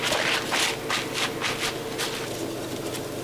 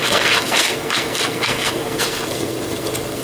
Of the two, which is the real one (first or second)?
first